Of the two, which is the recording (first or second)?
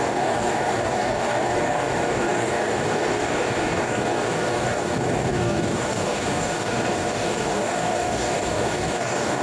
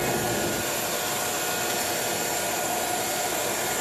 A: second